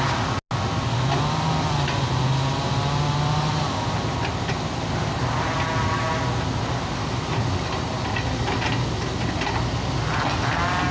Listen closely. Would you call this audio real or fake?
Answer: real